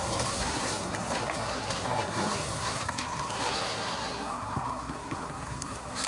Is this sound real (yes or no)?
no